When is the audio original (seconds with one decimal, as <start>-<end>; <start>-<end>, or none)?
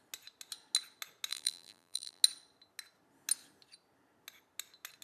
0.0-1.3; 2.2-5.0